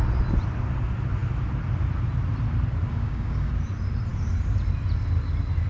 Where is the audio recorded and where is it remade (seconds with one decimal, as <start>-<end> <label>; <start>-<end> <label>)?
0.0-2.9 recorded; 2.9-3.5 remade; 3.5-5.7 recorded